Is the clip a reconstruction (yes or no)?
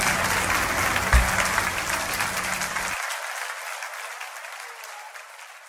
no